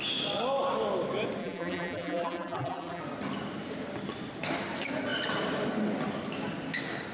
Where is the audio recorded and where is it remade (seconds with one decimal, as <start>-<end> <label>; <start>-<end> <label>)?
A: 0.0-1.4 recorded; 1.4-3.0 remade; 3.0-7.1 recorded